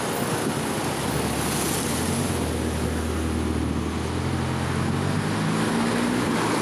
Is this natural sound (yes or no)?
yes